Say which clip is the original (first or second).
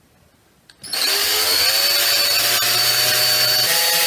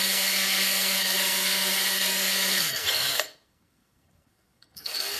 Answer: first